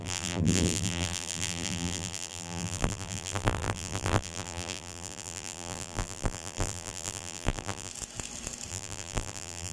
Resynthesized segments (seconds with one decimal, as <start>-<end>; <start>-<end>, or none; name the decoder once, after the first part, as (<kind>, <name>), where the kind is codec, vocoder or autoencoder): 0.0-7.9 (vocoder, BigVGAN v2); 8.7-9.7

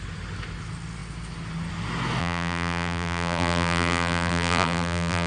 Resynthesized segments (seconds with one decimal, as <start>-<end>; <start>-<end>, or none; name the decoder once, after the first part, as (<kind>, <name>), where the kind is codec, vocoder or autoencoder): 2.2-5.3 (vocoder, BigVGAN v2)

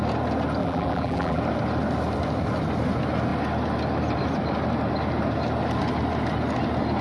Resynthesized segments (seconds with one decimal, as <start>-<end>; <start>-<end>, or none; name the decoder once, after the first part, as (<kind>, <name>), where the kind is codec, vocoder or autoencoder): 0.6-1.4 (vocoder, BigVGAN v2)

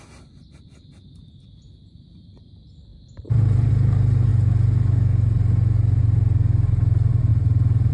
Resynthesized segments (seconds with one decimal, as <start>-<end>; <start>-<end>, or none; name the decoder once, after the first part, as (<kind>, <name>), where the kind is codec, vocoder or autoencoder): 2.9-3.7 (vocoder, BigVGAN v2); 7.3-7.9

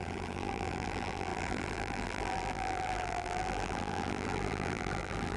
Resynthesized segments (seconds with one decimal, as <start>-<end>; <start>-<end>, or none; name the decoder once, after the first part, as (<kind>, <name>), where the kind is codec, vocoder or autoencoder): 0.0-5.4 (vocoder, BigVGAN v2)

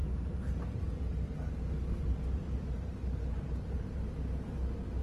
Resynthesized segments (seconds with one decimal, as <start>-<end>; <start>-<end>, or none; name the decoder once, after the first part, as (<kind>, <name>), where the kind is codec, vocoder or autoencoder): 2.9-4.0 (vocoder, BigVGAN v2)